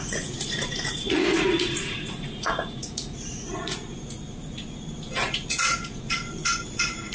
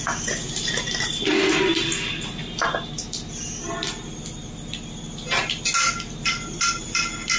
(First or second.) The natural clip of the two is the second